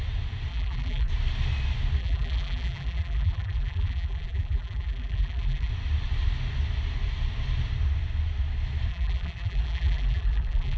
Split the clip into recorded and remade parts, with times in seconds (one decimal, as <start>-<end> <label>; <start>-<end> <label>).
0.0-0.5 recorded; 0.5-1.1 remade; 1.1-2.0 recorded; 2.0-5.7 remade; 5.7-8.9 recorded; 8.9-10.8 remade

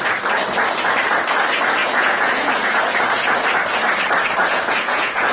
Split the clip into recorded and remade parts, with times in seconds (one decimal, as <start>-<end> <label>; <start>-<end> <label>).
0.0-1.8 recorded; 1.8-2.8 remade; 2.8-4.4 recorded; 4.4-5.3 remade